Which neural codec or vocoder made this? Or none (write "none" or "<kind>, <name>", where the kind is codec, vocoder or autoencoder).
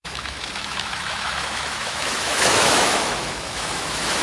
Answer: autoencoder, DAC-VAE